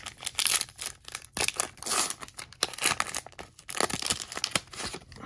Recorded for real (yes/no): yes